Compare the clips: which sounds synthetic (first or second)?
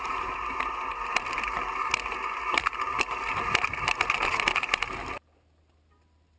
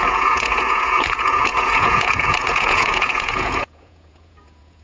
second